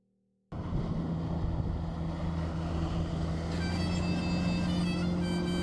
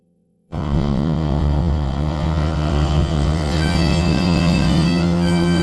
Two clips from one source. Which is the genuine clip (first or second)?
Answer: first